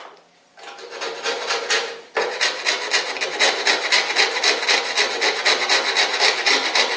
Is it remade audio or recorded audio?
recorded